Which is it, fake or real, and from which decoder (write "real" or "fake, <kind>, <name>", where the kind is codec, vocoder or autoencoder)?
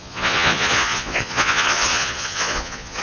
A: fake, vocoder, Vocos